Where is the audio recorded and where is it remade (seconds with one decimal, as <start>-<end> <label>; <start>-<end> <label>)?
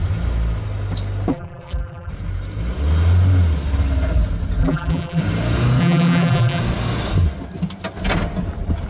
0.0-1.3 recorded; 1.3-2.1 remade; 2.1-4.6 recorded; 4.6-5.2 remade; 5.2-5.8 recorded; 5.8-6.6 remade; 6.6-8.9 recorded